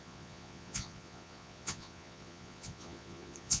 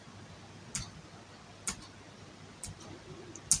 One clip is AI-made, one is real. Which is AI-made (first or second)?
first